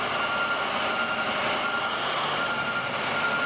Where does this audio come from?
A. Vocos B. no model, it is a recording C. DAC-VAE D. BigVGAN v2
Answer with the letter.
B